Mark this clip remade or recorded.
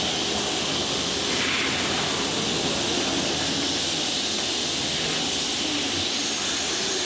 recorded